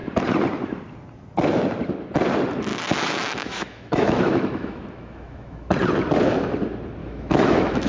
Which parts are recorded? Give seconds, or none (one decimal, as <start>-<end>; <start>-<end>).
0.0-2.7; 5.7-7.0

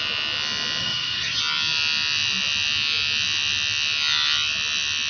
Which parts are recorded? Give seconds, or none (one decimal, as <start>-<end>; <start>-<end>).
0.0-0.8; 1.4-5.1

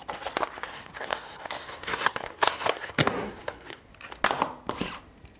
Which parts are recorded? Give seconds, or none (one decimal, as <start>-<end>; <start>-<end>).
0.0-0.7; 3.9-5.4

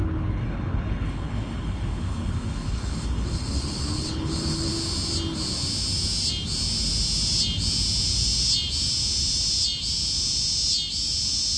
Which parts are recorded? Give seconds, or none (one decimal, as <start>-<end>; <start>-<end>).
4.7-11.6

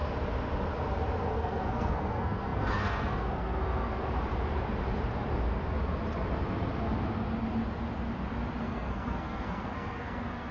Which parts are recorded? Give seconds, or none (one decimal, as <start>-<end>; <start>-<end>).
0.0-1.3; 4.0-8.6

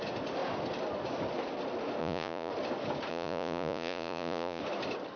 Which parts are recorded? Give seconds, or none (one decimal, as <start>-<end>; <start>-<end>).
0.0-2.0; 2.5-3.1; 4.6-5.2